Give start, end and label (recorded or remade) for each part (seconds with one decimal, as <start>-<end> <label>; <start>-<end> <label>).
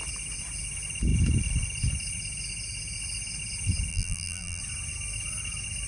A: 0.0-3.9 recorded; 3.9-4.6 remade; 4.6-5.9 recorded